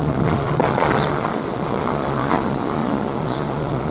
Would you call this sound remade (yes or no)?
yes